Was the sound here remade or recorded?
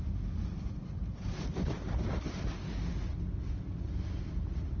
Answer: recorded